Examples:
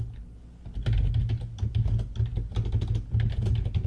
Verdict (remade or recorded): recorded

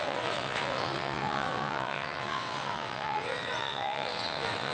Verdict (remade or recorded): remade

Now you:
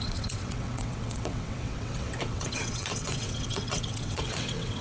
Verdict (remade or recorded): remade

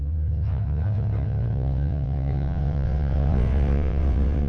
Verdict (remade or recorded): remade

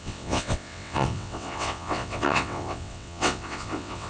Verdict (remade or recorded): remade